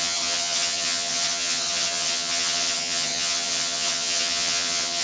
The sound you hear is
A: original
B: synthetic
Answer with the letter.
B